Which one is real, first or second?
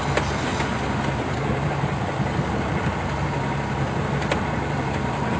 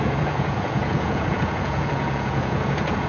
first